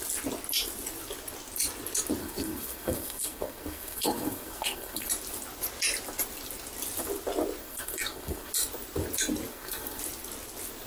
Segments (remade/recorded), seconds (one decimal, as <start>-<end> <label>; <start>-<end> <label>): 0.0-2.2 recorded; 2.2-5.1 remade; 5.1-7.6 recorded; 7.6-8.5 remade; 8.5-9.5 recorded; 9.5-10.0 remade; 10.0-10.9 recorded